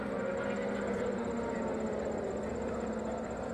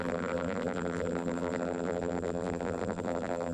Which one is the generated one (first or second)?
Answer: second